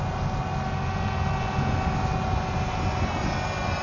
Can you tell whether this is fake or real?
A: real